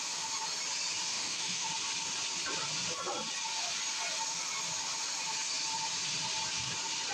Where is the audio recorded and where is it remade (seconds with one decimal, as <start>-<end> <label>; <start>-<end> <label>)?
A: 0.0-1.1 recorded; 1.1-1.7 remade; 1.7-7.1 recorded